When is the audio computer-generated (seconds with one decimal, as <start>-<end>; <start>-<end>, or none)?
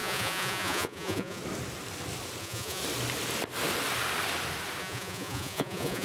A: 0.0-1.4; 2.4-2.8; 4.8-6.0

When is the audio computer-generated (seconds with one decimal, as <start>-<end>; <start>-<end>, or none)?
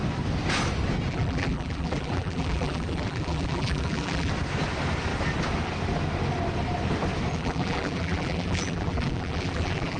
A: 1.1-4.3; 7.3-10.0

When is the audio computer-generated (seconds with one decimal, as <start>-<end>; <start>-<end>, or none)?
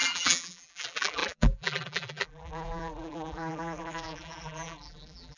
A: 0.0-5.4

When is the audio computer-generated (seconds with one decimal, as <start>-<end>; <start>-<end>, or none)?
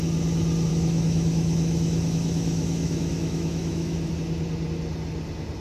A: 0.7-4.1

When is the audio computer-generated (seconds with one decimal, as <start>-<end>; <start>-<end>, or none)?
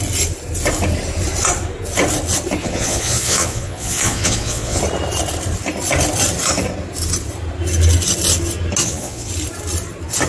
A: 2.6-4.8; 8.8-9.3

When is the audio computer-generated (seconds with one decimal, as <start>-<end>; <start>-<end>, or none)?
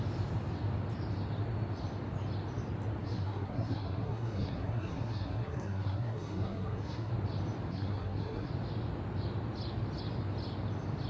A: 3.0-7.1; 7.7-8.5